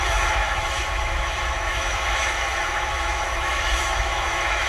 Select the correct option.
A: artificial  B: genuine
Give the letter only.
A